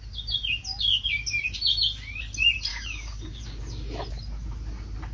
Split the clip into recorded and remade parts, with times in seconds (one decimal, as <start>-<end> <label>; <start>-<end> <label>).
0.0-2.7 recorded; 2.7-3.4 remade; 3.4-5.1 recorded

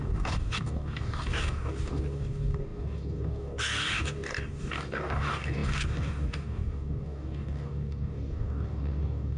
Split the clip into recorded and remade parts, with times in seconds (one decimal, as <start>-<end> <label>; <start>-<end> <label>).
0.0-9.4 remade

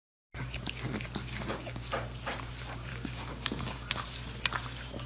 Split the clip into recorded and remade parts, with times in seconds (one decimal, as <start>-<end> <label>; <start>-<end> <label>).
0.0-1.2 recorded; 1.2-1.9 remade; 1.9-2.9 recorded; 2.9-3.9 remade; 3.9-5.1 recorded